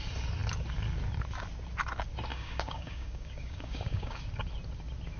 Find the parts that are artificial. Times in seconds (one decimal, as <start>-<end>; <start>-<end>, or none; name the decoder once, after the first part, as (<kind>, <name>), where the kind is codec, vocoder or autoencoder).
2.3-4.2 (codec, DAC)